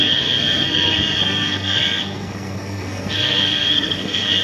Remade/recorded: remade